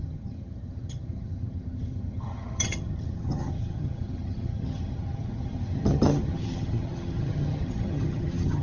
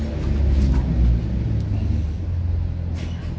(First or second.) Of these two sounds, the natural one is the second